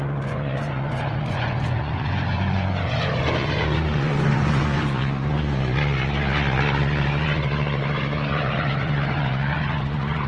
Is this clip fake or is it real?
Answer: fake